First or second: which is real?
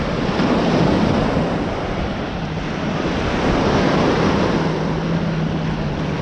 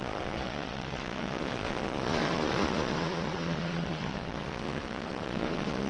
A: first